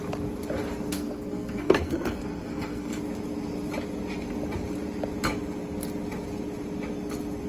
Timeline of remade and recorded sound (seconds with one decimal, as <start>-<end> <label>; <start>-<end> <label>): 0.0-0.9 recorded; 0.9-3.0 remade; 3.0-7.5 recorded